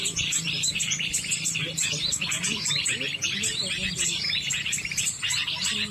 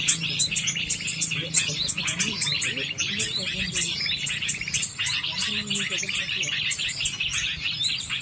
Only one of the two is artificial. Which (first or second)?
first